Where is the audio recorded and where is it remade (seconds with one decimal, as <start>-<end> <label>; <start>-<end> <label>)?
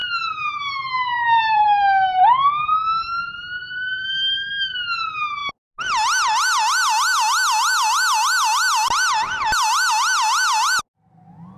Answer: 0.0-1.8 remade; 1.8-3.6 recorded; 3.6-4.5 remade; 4.5-11.6 recorded